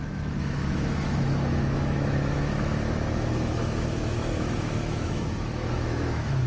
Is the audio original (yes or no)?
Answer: no